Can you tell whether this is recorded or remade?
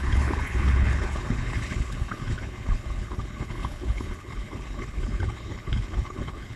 remade